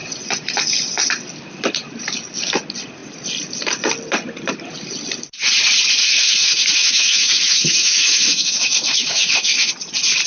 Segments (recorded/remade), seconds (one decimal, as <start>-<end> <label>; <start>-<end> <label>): 0.0-6.0 recorded; 6.0-9.7 remade; 9.7-10.3 recorded

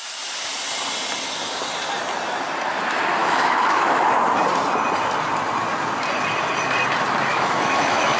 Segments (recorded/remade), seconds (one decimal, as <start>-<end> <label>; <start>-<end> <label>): 0.0-3.2 recorded; 3.2-4.1 remade; 4.1-7.3 recorded; 7.3-8.2 remade

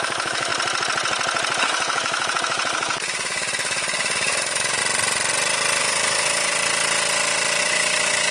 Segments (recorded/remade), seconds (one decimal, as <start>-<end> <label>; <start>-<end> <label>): 0.0-0.5 remade; 0.5-1.6 recorded; 1.6-4.8 remade; 4.8-5.8 recorded; 5.8-6.5 remade; 6.5-7.6 recorded; 7.6-8.3 remade

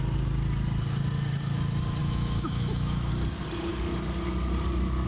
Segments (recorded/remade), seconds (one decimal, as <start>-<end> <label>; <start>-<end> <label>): 0.0-2.0 recorded; 2.0-3.1 remade; 3.1-5.1 recorded

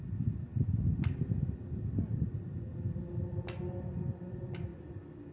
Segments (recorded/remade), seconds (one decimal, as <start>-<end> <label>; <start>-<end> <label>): 0.0-5.3 recorded

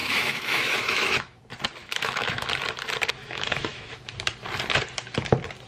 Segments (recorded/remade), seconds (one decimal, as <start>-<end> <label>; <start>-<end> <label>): 0.0-1.4 remade; 1.4-1.8 recorded; 1.8-2.5 remade; 2.5-3.2 recorded; 3.2-4.0 remade; 4.0-5.7 recorded

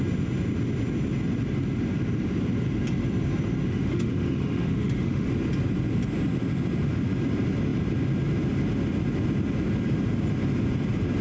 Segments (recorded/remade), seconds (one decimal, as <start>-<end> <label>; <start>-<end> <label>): 0.0-3.7 recorded; 3.7-5.3 remade; 5.3-11.2 recorded

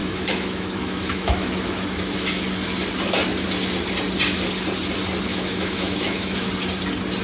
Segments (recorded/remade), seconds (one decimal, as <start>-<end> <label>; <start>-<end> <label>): 0.0-2.4 remade; 2.4-5.3 recorded; 5.3-6.5 remade; 6.5-7.2 recorded